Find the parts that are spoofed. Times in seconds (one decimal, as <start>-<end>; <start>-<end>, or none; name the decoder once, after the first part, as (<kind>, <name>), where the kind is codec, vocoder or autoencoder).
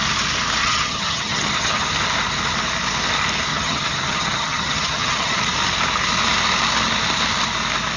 0.6-1.9 (vocoder, HiFi-GAN); 3.5-5.4